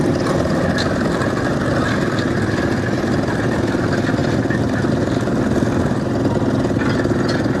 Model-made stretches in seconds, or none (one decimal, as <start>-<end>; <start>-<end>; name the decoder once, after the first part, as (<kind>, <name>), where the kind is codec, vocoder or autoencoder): none